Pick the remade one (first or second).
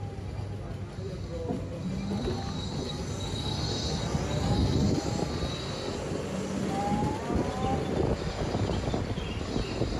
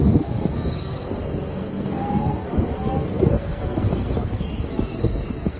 second